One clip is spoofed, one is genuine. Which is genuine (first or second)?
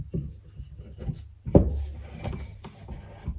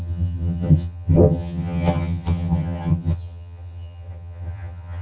first